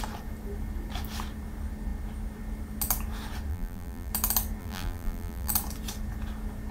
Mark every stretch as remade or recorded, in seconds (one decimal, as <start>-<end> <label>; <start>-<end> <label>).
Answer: 0.0-3.5 recorded; 3.5-4.1 remade; 4.1-4.6 recorded; 4.6-5.5 remade; 5.5-6.7 recorded